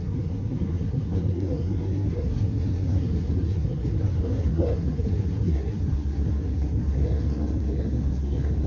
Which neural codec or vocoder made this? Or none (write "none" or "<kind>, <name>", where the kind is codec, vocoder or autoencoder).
codec, SNAC